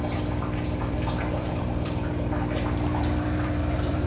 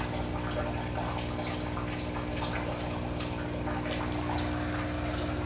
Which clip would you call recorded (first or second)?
second